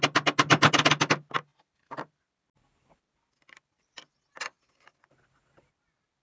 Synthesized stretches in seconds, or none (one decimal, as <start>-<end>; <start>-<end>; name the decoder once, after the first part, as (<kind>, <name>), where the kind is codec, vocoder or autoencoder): 1.5-2.4 (vocoder, BigVGAN v2)